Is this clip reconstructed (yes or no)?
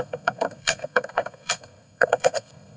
yes